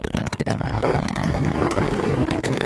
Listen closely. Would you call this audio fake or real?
fake